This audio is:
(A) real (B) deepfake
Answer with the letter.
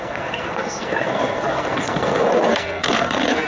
B